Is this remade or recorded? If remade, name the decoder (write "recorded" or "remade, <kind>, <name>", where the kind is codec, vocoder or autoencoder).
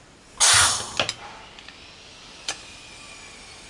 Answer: recorded